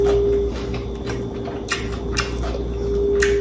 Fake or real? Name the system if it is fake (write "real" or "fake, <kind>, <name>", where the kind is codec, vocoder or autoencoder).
real